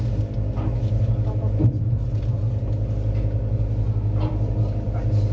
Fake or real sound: real